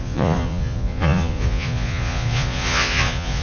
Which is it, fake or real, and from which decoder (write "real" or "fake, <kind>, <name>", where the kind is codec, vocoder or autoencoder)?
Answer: fake, vocoder, Vocos